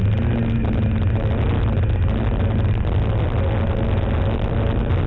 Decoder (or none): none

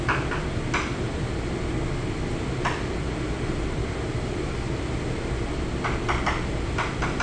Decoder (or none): none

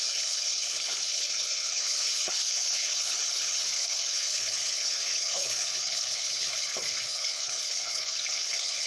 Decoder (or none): codec, HILCodec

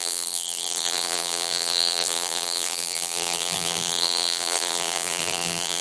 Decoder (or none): vocoder, BigVGAN v2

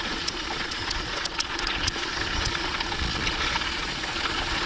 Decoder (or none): vocoder, Vocos